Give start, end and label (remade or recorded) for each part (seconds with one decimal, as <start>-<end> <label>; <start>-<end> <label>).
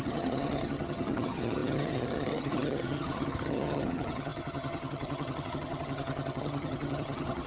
0.0-7.5 remade